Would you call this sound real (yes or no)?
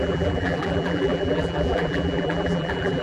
no